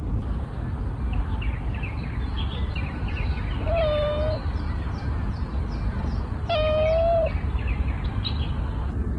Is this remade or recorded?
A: recorded